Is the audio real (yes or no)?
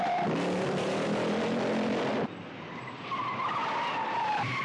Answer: no